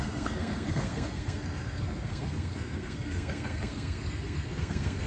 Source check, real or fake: fake